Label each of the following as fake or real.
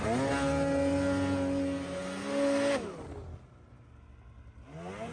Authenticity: real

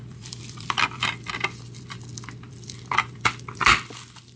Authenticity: fake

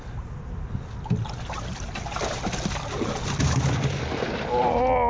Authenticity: real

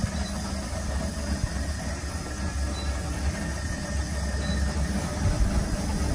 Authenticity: real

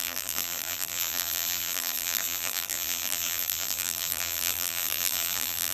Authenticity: fake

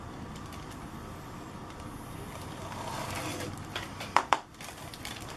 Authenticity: fake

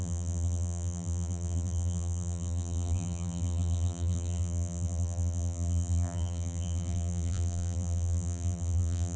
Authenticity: fake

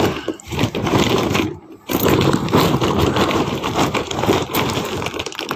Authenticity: fake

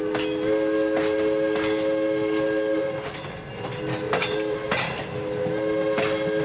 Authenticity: real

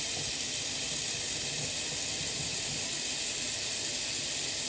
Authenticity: real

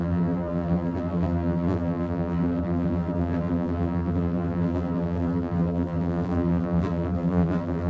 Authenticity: fake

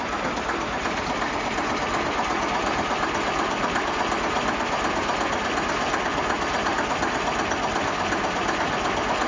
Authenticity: real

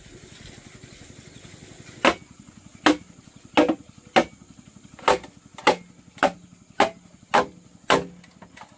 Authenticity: real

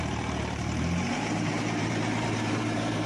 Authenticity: fake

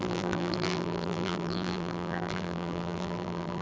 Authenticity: fake